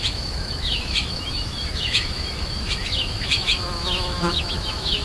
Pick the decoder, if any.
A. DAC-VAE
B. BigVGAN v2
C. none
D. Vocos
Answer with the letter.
A